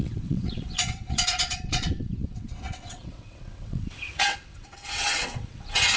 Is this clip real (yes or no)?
no